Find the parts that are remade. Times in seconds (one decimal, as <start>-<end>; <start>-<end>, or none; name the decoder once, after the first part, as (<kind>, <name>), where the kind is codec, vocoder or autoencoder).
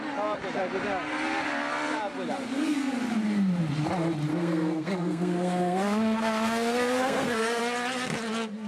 2.5-3.0 (codec, SNAC); 4.3-7.6